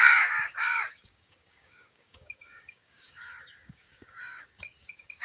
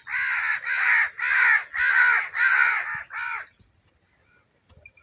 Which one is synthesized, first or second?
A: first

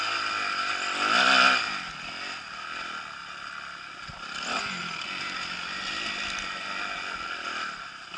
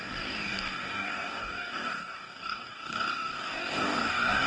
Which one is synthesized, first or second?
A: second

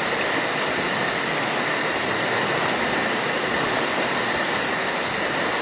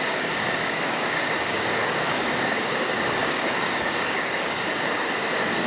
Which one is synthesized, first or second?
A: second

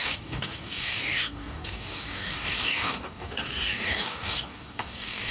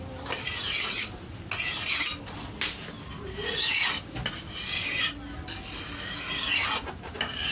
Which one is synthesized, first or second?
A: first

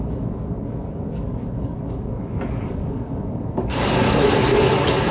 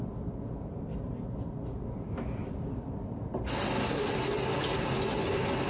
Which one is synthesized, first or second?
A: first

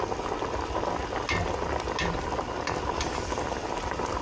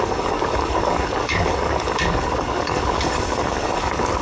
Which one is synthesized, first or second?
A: second